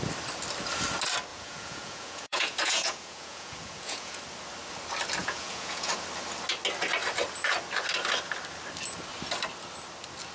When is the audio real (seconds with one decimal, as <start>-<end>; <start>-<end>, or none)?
0.0-1.3; 4.2-5.2; 5.9-10.3